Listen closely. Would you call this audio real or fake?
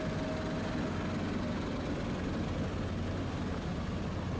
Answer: real